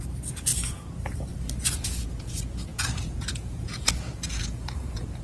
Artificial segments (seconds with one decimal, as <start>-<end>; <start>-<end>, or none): 0.0-0.5; 1.6-5.2